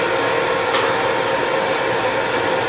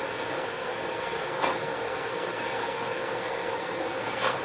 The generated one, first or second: second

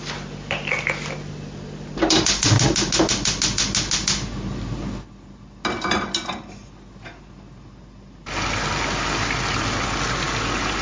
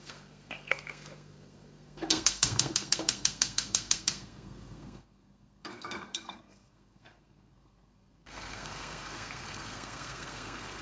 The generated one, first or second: second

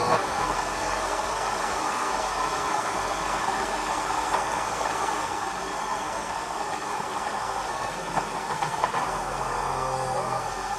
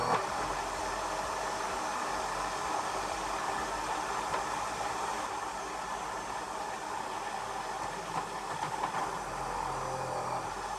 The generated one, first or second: first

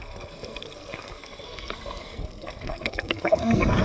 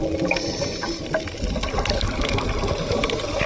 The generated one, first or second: first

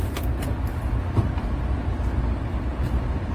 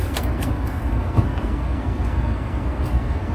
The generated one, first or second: second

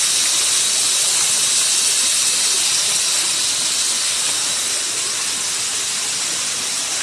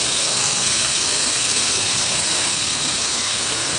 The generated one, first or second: second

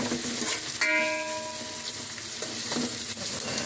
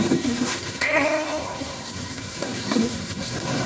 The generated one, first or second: second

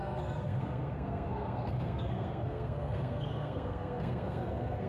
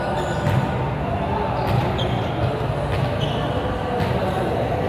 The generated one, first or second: first